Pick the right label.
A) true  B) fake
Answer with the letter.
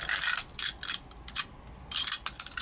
A